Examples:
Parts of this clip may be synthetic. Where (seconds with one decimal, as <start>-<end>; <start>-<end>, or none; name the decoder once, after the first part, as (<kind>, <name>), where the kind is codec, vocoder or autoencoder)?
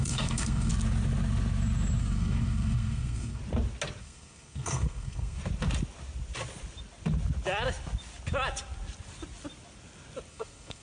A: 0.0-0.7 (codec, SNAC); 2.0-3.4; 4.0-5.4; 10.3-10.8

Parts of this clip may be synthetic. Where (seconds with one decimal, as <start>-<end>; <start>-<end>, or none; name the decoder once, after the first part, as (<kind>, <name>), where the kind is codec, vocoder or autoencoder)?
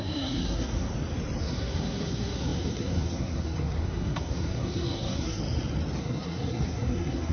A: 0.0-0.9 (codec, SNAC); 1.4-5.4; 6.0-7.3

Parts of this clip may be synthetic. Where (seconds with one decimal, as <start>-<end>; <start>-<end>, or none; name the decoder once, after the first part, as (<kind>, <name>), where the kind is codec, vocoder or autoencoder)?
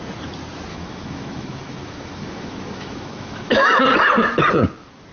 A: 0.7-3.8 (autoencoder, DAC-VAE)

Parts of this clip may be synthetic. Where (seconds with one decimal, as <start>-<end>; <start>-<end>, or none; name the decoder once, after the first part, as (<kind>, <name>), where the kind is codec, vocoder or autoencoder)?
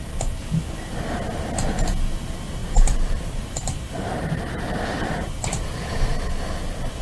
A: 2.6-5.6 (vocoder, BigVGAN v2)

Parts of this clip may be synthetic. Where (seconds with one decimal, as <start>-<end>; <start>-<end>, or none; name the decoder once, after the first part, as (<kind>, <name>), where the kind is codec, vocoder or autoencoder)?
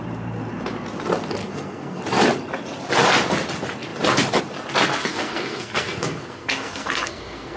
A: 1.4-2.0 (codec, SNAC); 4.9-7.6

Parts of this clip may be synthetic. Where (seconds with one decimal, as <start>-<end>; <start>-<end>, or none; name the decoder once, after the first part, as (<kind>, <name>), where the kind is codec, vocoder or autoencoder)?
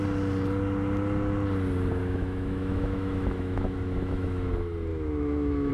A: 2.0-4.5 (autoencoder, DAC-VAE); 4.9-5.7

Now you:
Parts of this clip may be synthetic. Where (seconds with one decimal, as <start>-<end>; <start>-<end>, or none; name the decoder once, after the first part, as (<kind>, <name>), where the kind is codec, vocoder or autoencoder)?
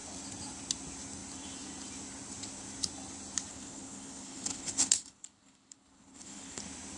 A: 3.5-6.6 (codec, HILCodec)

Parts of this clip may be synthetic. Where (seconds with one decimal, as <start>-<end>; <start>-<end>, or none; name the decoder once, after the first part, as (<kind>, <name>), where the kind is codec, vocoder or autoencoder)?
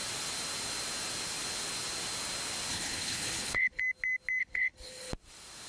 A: 2.7-3.8 (codec, HILCodec); 4.4-5.1